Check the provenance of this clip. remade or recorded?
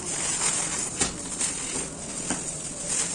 recorded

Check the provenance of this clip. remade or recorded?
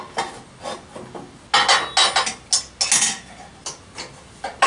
recorded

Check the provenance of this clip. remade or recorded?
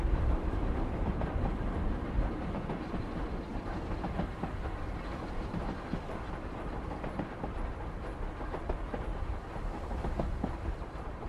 recorded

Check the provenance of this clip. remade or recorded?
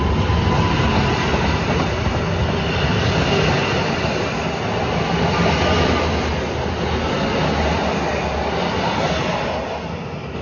recorded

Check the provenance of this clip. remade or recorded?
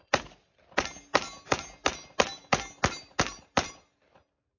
recorded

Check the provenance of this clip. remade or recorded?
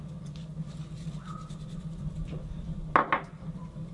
recorded